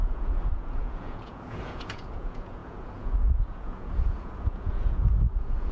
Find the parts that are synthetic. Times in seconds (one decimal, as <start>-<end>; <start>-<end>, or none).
0.0-5.7